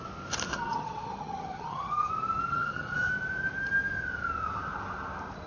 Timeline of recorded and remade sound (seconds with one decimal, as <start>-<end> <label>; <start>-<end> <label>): 0.0-0.5 recorded; 0.5-2.1 remade; 2.1-2.5 recorded; 2.5-3.1 remade; 3.1-5.5 recorded